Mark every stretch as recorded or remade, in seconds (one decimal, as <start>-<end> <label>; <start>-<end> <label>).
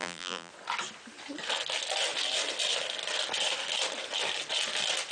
0.0-0.5 remade; 0.5-5.1 recorded